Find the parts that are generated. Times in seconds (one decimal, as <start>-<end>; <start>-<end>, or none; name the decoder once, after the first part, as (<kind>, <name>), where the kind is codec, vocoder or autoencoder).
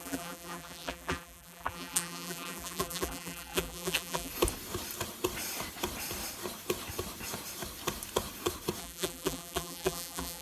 0.0-4.3 (vocoder, BigVGAN v2); 8.8-10.4